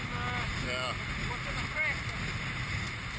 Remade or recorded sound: recorded